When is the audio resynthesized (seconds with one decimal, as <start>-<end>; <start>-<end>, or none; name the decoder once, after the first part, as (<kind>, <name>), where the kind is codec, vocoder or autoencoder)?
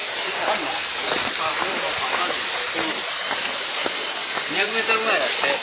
none